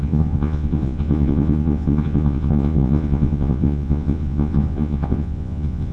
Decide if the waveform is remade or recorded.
remade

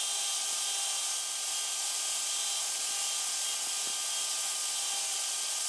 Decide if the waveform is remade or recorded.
recorded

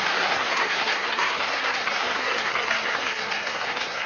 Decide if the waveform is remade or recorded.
remade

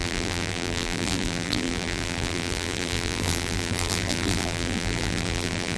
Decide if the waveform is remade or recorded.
remade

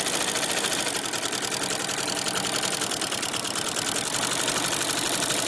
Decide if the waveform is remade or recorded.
recorded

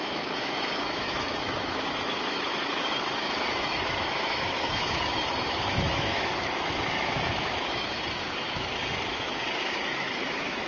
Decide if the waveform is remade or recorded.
remade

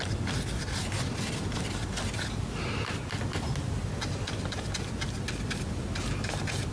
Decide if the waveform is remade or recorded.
recorded